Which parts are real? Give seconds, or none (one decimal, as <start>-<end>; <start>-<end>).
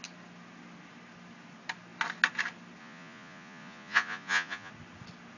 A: 0.0-2.8; 4.7-5.4